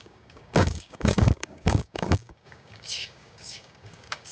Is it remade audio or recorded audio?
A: remade